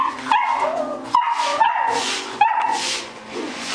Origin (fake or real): fake